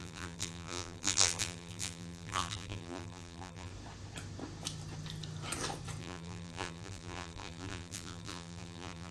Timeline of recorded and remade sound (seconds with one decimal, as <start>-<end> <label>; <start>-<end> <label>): 0.0-3.7 remade; 3.7-6.0 recorded; 6.0-9.1 remade